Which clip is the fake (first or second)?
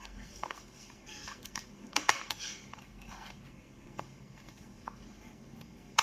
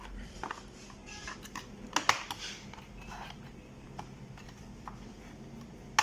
first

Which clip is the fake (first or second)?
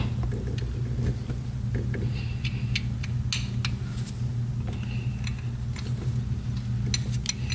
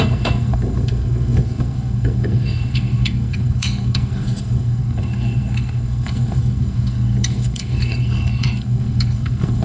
second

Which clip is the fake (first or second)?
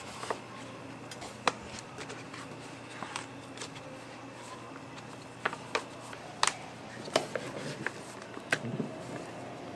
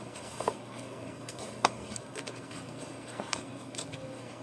second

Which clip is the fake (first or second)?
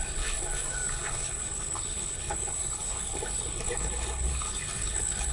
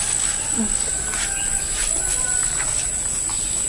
first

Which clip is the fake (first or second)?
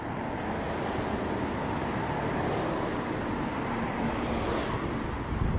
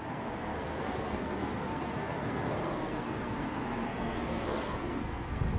second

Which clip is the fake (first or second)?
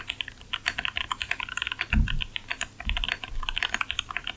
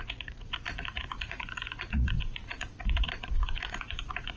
second